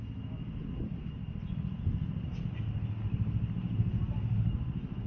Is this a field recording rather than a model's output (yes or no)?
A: yes